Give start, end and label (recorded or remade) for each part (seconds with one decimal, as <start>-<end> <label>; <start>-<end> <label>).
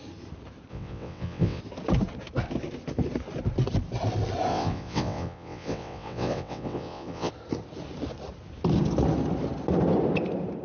0.0-0.7 recorded; 0.7-1.6 remade; 1.6-4.5 recorded; 4.5-7.3 remade; 7.3-10.6 recorded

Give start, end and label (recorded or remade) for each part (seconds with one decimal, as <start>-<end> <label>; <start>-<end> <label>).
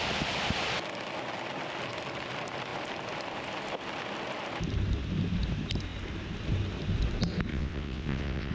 0.0-7.5 recorded; 7.5-8.5 remade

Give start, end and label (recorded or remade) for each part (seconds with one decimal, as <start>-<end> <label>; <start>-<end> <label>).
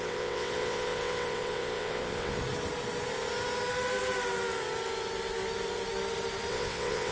0.0-2.4 remade; 2.4-6.5 recorded; 6.5-7.1 remade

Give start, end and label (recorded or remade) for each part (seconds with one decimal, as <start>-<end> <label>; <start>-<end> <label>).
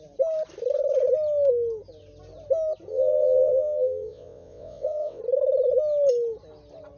0.0-2.9 recorded; 2.9-5.2 remade; 5.2-7.0 recorded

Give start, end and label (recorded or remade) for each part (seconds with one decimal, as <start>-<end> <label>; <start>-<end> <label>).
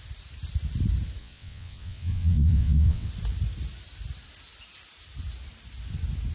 0.0-1.2 recorded; 1.2-3.1 remade; 3.1-6.3 recorded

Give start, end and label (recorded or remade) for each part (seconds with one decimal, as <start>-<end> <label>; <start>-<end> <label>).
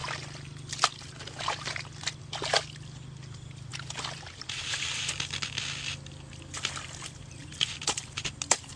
0.0-8.8 recorded